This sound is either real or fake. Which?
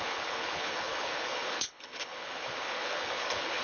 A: fake